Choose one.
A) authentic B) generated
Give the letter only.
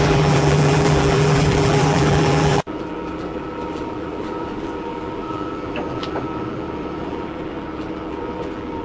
B